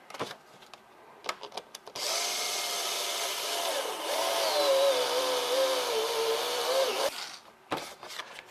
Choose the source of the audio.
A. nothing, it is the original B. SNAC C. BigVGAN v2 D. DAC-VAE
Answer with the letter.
A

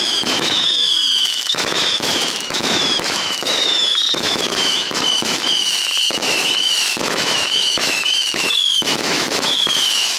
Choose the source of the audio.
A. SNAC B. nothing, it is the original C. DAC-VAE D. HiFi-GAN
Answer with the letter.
C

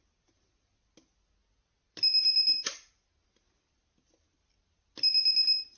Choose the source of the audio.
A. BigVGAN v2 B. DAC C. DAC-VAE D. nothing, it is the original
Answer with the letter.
D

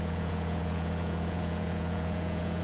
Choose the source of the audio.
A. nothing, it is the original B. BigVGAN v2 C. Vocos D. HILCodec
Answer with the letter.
C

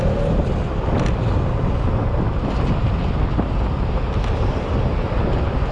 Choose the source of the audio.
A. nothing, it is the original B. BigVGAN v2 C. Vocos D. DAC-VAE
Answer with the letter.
A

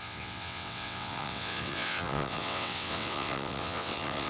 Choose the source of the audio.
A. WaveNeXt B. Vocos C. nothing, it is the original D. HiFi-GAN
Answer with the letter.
A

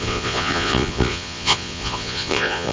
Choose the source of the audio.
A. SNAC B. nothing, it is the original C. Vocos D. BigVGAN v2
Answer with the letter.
C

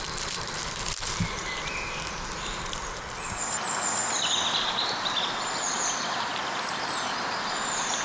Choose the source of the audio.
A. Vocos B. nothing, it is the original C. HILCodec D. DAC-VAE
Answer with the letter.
B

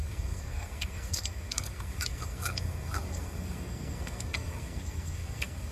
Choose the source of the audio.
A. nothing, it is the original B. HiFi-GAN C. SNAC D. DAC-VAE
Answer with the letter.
C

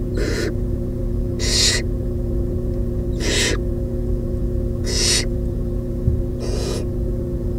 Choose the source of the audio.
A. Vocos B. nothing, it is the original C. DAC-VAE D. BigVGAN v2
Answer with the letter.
A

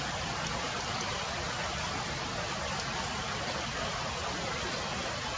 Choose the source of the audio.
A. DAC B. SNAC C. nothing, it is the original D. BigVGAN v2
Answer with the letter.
C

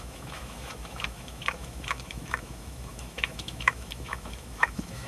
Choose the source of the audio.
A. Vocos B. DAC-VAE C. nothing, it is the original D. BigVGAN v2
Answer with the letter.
B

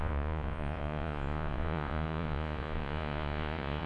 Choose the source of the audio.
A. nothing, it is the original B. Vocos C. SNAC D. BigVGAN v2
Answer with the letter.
B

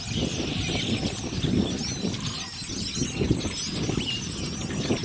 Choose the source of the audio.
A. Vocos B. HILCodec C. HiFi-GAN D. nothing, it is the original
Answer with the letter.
D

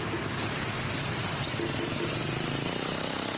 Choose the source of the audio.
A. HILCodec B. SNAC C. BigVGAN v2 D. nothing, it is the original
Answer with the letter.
D